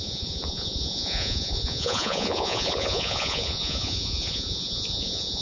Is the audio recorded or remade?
remade